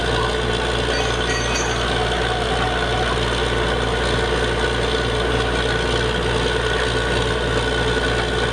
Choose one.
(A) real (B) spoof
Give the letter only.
A